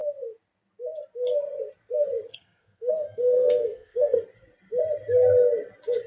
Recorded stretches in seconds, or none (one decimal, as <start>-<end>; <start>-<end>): 0.0-2.3; 4.2-6.1